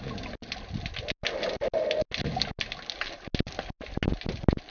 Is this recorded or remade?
recorded